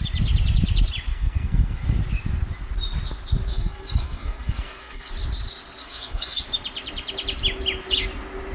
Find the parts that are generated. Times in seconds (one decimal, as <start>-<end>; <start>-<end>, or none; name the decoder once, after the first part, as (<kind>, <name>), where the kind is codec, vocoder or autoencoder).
1.1-2.0 (codec, SNAC); 3.5-5.1; 5.8-6.4